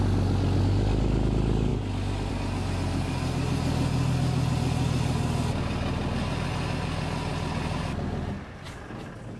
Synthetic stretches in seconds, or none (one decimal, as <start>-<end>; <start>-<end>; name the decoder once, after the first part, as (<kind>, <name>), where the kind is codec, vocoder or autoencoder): none